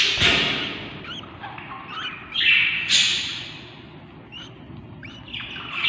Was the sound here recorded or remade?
recorded